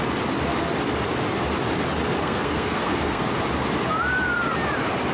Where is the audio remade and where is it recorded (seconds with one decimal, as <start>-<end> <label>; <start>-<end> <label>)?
0.0-2.2 recorded; 2.2-3.2 remade; 3.2-5.1 recorded